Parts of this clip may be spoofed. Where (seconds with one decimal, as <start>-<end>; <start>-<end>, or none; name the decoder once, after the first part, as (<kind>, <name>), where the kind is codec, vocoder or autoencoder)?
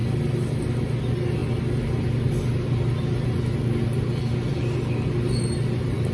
none